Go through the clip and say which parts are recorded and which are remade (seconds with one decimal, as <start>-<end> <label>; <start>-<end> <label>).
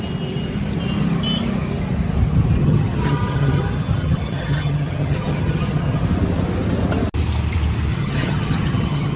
0.0-2.6 recorded; 2.6-3.6 remade; 3.6-4.0 recorded; 4.0-6.0 remade; 6.0-7.9 recorded; 7.9-9.2 remade